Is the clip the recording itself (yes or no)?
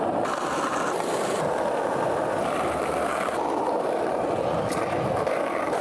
yes